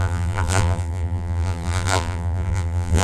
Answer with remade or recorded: remade